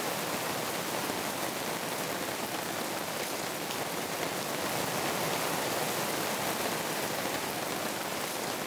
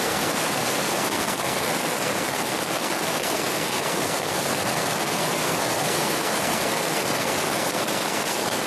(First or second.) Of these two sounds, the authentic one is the first